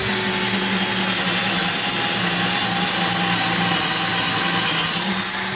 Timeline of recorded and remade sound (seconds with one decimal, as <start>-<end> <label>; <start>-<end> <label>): 0.0-5.6 recorded